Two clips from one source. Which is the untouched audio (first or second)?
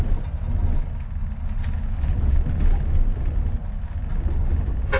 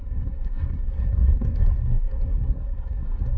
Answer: first